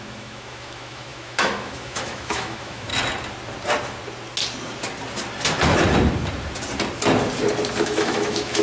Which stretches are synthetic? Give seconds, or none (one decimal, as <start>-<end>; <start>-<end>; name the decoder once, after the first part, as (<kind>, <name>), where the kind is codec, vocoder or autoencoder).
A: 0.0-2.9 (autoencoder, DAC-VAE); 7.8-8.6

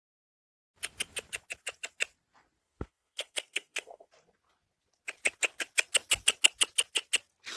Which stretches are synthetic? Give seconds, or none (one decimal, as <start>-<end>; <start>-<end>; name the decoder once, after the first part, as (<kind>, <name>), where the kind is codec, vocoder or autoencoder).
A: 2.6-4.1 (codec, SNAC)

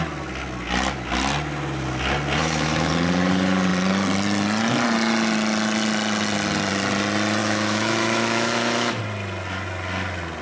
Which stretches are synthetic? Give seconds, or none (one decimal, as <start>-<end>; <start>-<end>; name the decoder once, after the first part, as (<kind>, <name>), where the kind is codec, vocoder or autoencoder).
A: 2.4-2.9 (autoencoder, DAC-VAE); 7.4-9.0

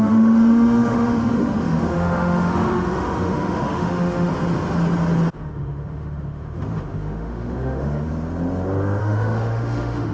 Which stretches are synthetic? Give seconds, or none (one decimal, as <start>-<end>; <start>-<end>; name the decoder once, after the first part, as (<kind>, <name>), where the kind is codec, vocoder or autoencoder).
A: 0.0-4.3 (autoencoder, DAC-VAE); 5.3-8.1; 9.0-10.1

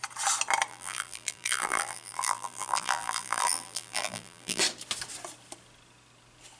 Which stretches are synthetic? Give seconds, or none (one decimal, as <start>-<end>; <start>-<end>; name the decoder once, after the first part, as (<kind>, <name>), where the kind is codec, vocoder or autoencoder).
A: 0.7-4.6 (vocoder, BigVGAN v2)

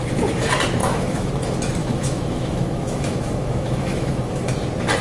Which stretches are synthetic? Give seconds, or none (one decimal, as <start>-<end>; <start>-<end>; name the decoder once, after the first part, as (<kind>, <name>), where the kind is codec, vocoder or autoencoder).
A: 0.8-1.3 (autoencoder, DAC-VAE); 1.8-4.5

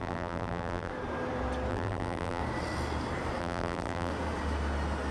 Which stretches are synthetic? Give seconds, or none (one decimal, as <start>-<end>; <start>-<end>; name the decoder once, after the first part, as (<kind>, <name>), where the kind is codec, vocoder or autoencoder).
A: 0.0-0.9 (vocoder, BigVGAN v2); 1.7-2.4; 3.4-4.1